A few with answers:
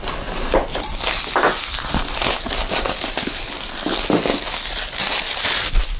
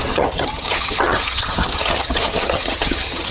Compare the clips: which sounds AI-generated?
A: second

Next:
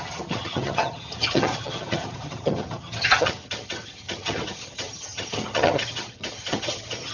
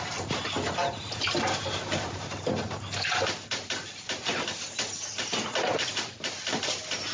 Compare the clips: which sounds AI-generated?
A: first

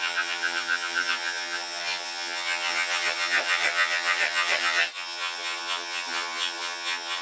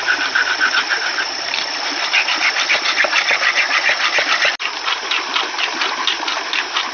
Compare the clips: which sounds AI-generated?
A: first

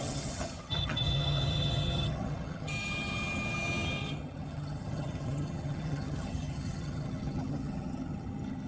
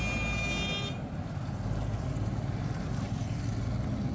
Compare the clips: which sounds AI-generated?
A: first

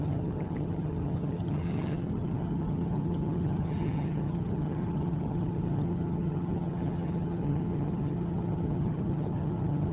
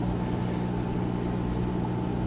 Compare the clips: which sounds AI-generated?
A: first